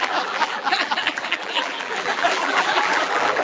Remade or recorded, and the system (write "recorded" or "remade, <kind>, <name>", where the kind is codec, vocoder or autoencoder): remade, vocoder, BigVGAN v2